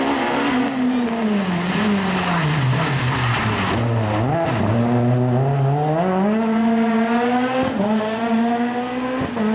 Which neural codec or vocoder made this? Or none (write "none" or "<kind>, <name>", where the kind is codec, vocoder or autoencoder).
none